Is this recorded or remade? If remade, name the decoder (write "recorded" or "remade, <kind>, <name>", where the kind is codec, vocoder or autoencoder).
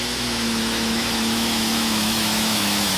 remade, autoencoder, DAC-VAE